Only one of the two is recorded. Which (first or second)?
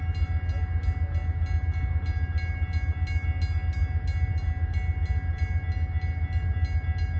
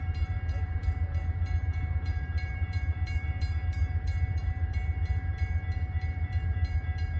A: first